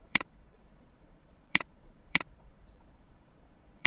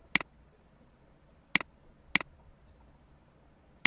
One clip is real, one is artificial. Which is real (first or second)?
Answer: second